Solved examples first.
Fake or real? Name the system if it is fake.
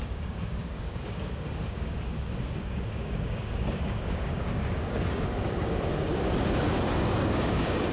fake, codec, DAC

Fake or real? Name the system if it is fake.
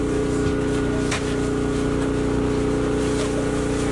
real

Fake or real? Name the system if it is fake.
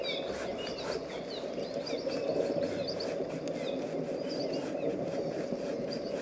real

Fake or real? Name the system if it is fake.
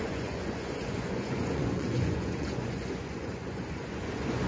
fake, vocoder, Vocos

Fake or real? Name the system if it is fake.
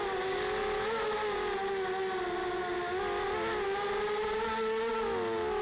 real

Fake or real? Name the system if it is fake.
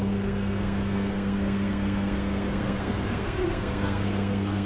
fake, codec, SNAC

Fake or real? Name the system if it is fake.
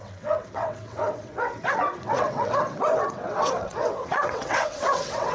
fake, vocoder, WaveNeXt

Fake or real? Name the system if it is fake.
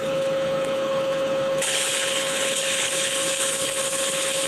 fake, codec, HILCodec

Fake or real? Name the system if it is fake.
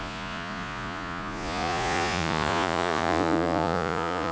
fake, vocoder, Vocos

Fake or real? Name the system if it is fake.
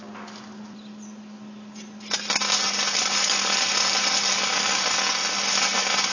real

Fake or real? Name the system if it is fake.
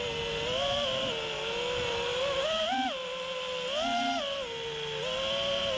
real